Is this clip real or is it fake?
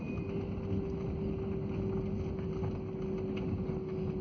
real